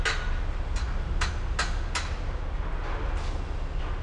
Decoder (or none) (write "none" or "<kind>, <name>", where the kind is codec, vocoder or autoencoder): none